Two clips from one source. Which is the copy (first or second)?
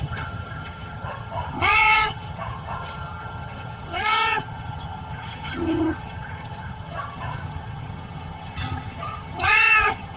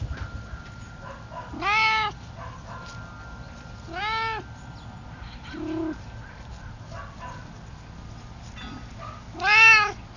first